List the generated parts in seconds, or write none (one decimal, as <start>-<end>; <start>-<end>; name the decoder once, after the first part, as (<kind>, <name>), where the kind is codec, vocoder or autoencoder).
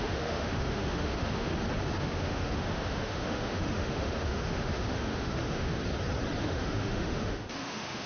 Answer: 0.0-1.5 (autoencoder, DAC-VAE); 2.0-5.8; 6.4-8.1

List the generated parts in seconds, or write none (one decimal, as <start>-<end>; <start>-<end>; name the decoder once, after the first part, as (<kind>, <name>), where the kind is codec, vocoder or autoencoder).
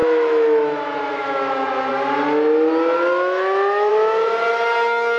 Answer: 0.0-1.9 (autoencoder, DAC-VAE); 3.1-3.9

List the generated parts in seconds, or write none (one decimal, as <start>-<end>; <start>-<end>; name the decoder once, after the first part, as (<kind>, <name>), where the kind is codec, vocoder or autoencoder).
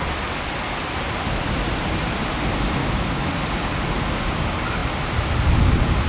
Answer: 2.8-3.3 (autoencoder, DAC-VAE)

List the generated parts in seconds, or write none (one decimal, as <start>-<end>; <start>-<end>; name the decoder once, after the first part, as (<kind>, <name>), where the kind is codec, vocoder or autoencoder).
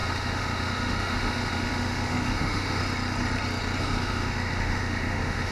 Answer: 0.0-2.8 (autoencoder, DAC-VAE); 3.8-5.5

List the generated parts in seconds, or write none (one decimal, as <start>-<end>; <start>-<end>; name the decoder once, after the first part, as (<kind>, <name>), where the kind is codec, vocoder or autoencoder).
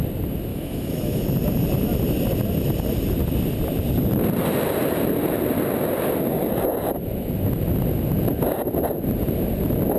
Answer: 0.5-1.2 (autoencoder, DAC-VAE)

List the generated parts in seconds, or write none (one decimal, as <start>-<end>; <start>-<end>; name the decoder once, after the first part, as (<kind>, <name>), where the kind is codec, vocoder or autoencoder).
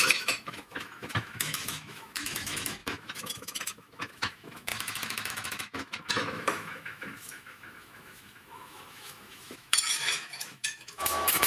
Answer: 0.0-11.5 (autoencoder, DAC-VAE)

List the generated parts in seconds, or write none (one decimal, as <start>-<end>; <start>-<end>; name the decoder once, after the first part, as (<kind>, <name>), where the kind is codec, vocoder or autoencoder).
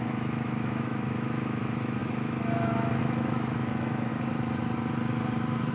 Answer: 0.0-4.1 (autoencoder, DAC-VAE)